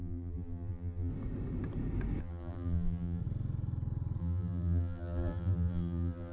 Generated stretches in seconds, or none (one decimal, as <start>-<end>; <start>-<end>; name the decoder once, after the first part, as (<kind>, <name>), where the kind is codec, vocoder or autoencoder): 0.0-1.1 (vocoder, BigVGAN v2); 2.2-3.2; 4.2-6.3